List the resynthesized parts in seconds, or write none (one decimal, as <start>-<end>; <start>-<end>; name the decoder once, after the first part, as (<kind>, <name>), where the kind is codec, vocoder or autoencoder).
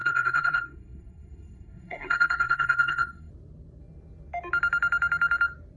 0.0-3.3 (codec, SNAC)